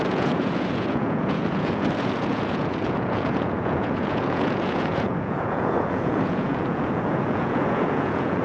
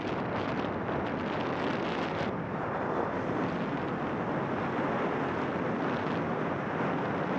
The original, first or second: second